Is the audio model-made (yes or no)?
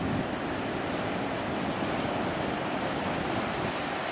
yes